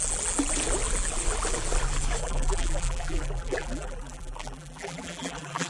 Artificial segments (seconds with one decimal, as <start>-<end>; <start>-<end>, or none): 2.2-5.7